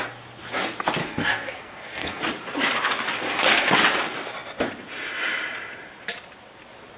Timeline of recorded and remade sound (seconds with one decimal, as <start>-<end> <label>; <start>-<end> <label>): 0.0-1.0 recorded; 1.0-2.2 remade; 2.2-3.3 recorded; 3.3-3.8 remade; 3.8-7.0 recorded